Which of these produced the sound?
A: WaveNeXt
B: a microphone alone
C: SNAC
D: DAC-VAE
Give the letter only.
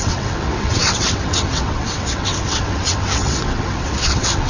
A